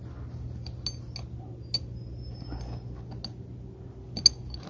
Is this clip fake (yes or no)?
no